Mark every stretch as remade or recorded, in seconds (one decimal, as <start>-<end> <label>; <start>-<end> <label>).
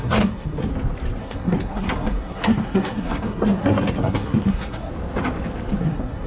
0.0-0.7 remade; 0.7-1.2 recorded; 1.2-4.9 remade; 4.9-5.8 recorded; 5.8-6.3 remade